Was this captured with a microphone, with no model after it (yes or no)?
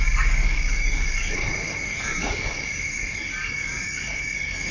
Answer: no